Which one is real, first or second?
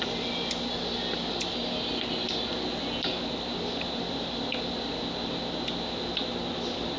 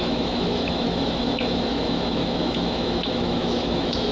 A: first